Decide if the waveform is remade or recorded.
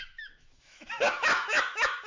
remade